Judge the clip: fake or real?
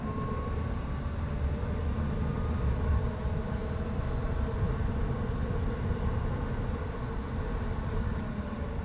real